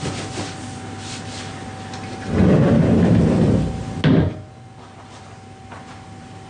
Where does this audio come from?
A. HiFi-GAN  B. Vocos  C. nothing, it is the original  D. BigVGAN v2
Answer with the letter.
C